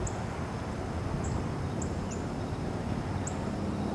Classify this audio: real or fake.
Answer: real